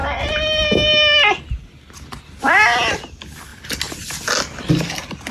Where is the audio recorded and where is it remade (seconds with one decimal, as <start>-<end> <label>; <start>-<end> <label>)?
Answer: 0.0-5.3 recorded